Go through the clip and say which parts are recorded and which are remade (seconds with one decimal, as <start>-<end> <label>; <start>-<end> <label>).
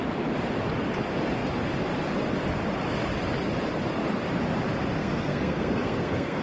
0.0-5.0 recorded; 5.0-6.4 remade